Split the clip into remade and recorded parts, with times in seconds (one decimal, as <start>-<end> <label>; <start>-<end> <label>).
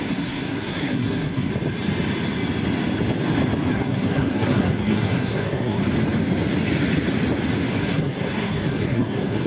0.0-1.5 remade; 1.5-3.7 recorded; 3.7-5.8 remade; 5.8-7.8 recorded; 7.8-9.5 remade